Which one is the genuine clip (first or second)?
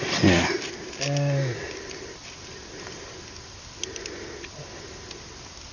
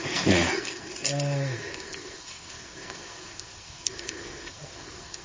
first